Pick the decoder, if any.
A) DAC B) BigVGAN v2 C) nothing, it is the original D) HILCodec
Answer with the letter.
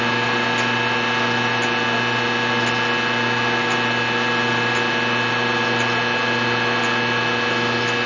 C